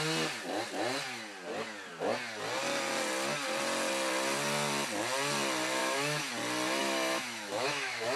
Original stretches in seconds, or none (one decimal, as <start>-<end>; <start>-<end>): 0.0-5.8; 6.3-6.8